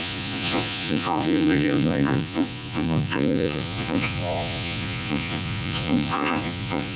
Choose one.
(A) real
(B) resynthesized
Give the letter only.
B